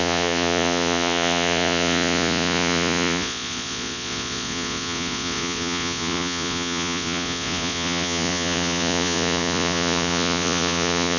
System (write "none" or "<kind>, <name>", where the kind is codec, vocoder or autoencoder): vocoder, Vocos